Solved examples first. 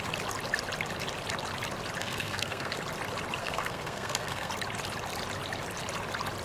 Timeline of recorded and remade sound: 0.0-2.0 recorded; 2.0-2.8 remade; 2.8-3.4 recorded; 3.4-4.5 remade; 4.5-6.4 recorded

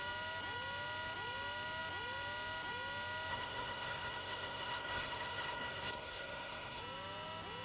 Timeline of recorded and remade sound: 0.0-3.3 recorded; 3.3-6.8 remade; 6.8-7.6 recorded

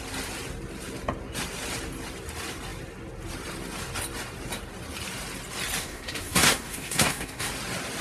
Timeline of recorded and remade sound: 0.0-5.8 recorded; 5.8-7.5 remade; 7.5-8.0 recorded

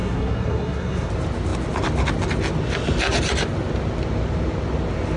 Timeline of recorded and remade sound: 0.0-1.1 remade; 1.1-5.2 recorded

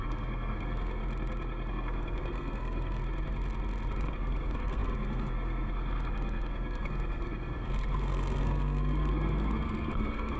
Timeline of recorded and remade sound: 0.0-1.0 remade; 1.0-1.7 recorded; 1.7-3.0 remade; 3.0-4.1 recorded; 4.1-10.4 remade

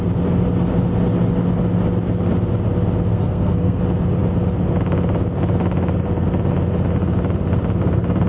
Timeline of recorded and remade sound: 0.0-3.1 recorded; 3.1-3.8 remade; 3.8-8.3 recorded